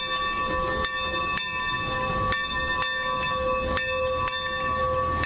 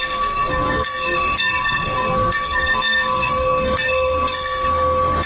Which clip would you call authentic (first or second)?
first